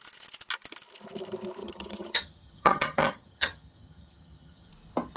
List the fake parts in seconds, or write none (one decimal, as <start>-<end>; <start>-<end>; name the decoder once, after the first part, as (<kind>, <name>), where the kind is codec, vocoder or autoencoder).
1.6-4.7 (vocoder, HiFi-GAN)